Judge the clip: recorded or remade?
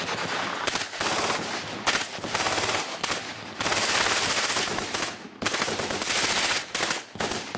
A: recorded